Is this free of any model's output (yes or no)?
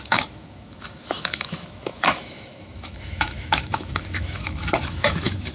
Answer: no